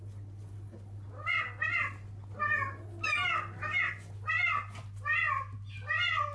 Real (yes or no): yes